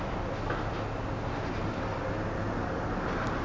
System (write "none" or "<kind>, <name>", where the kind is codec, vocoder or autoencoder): none